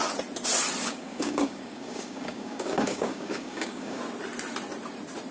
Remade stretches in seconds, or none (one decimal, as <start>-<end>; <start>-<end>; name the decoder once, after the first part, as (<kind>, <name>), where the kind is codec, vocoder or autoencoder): 0.8-4.0 (codec, DAC)